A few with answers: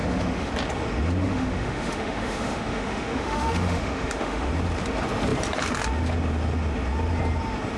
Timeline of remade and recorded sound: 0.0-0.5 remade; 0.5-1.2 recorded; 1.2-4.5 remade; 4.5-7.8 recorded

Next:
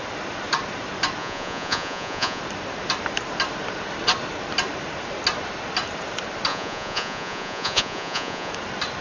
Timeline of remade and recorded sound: 0.0-1.2 recorded; 1.2-2.4 remade; 2.4-6.5 recorded; 6.5-8.5 remade; 8.5-9.0 recorded

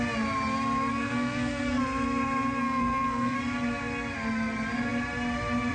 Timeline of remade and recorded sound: 0.0-0.9 recorded; 0.9-1.8 remade; 1.8-2.6 recorded; 2.6-3.4 remade; 3.4-5.7 recorded